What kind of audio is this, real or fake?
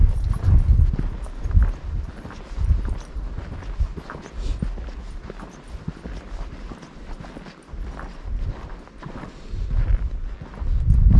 real